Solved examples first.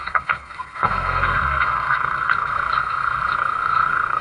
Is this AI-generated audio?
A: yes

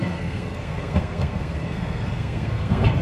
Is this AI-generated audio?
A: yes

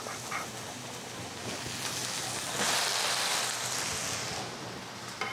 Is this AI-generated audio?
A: no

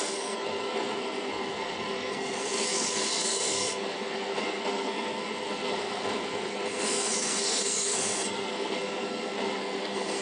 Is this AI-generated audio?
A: yes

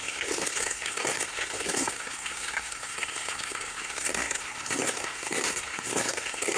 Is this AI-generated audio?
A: yes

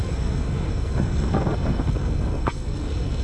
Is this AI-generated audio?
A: yes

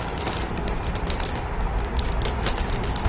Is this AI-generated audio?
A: no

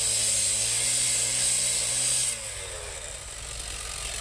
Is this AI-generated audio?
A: no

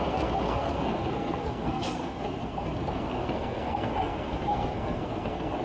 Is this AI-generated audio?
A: yes